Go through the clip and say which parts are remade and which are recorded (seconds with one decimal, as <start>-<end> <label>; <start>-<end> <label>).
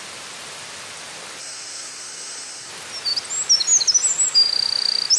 0.0-1.4 recorded; 1.4-2.7 remade; 2.7-5.2 recorded